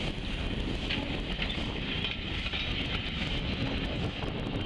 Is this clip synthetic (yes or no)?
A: no